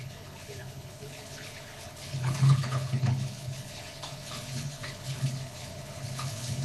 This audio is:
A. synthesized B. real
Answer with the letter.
A